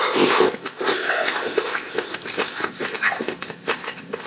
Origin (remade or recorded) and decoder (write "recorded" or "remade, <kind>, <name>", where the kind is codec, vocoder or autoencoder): remade, codec, ZipCodec